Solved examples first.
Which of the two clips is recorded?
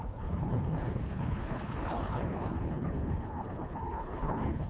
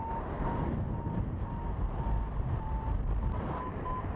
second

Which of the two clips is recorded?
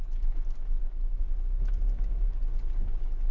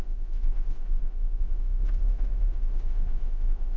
first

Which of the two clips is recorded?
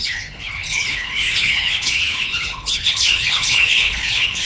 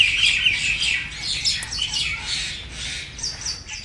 second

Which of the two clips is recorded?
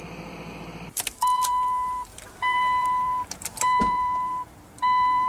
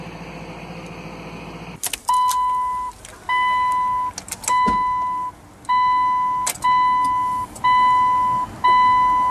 second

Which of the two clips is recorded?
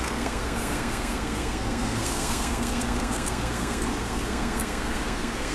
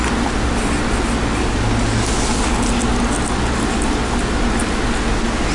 second